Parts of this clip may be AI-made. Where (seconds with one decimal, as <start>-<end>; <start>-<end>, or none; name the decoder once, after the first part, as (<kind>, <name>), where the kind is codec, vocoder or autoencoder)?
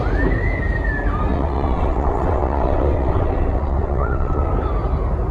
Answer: 1.3-4.5 (vocoder, WaveNeXt)